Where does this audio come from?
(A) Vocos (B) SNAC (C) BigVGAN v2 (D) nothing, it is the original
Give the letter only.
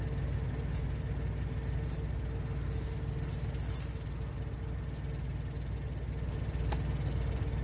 D